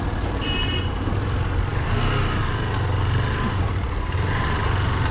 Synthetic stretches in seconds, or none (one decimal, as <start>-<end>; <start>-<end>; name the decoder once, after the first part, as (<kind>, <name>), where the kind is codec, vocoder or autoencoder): none